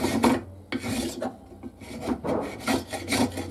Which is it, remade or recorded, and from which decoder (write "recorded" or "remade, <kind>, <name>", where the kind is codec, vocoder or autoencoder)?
recorded